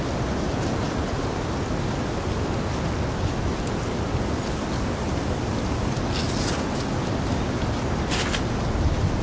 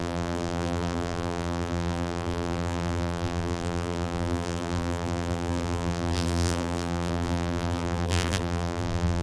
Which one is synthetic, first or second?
second